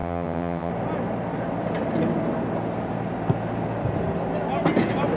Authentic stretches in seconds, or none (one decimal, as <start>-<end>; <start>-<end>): 0.7-5.2